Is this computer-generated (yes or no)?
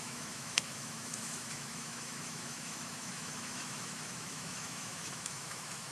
yes